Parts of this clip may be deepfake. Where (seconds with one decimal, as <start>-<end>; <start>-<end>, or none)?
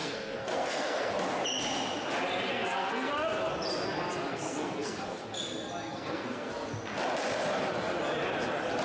0.0-1.1; 2.5-3.1; 4.3-5.2; 5.9-6.5